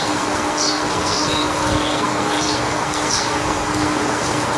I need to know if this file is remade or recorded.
remade